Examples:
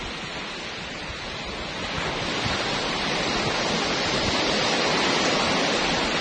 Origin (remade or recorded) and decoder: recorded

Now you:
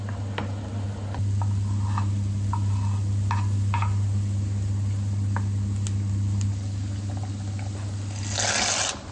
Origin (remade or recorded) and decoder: recorded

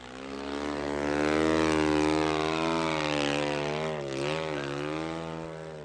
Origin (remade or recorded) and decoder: recorded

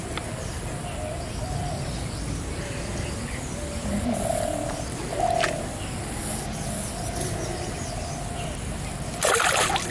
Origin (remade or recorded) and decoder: recorded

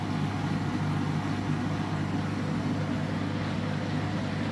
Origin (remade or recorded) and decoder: recorded